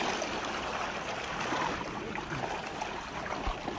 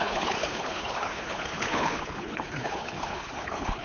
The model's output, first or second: second